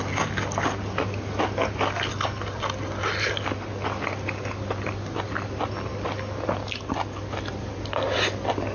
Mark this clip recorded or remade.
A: recorded